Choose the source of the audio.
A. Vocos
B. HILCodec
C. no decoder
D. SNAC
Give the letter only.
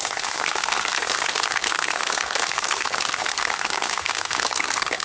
D